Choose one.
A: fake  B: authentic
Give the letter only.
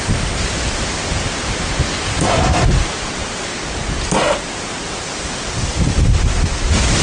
B